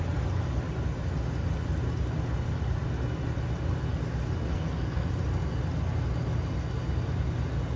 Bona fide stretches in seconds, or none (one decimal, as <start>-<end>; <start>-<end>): 0.0-4.5; 5.1-7.8